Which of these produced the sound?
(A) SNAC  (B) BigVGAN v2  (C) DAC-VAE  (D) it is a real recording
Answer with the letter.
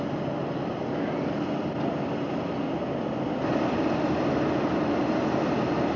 D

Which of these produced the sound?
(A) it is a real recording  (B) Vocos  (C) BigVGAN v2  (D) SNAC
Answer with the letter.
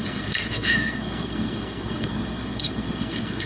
D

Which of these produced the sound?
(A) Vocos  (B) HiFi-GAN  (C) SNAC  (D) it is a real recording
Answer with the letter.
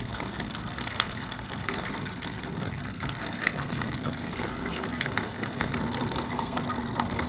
C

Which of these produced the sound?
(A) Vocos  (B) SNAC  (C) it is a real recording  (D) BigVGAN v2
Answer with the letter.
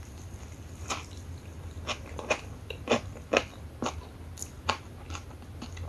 C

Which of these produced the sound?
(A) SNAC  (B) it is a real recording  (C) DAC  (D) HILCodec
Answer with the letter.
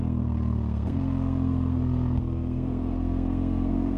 A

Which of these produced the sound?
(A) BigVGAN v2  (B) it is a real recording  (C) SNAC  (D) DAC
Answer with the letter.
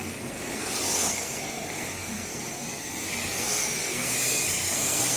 C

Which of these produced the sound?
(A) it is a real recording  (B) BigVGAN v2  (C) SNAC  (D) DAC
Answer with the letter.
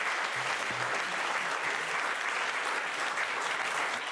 A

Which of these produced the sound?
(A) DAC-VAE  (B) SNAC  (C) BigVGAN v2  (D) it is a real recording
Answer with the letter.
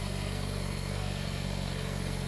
B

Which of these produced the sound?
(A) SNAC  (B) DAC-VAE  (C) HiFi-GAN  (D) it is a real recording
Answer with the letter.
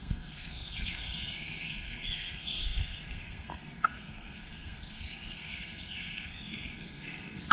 A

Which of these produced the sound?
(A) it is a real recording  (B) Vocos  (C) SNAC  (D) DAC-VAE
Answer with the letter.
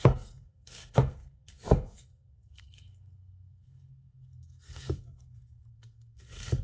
C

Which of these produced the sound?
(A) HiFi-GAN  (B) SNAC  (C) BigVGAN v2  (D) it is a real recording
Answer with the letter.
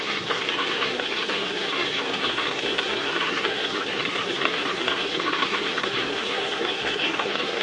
B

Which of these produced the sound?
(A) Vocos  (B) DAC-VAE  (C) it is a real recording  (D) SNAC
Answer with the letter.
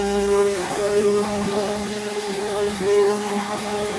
D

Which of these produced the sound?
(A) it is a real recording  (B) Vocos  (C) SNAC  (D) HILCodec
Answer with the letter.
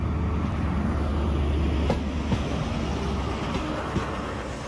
A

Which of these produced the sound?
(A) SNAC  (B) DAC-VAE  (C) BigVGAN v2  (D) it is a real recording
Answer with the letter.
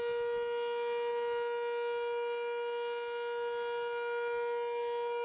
D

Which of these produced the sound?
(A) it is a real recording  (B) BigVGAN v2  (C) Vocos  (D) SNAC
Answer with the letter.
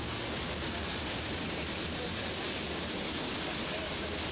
A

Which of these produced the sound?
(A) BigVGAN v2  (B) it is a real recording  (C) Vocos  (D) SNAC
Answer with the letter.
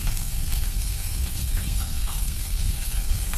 D